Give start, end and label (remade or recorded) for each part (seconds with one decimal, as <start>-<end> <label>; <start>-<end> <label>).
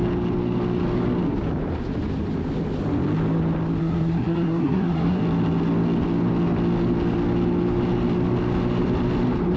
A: 0.0-3.8 recorded; 3.8-5.2 remade; 5.2-9.6 recorded